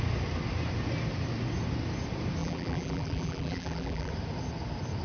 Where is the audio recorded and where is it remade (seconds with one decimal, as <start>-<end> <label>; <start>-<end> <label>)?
0.0-2.4 recorded; 2.4-4.1 remade; 4.1-5.0 recorded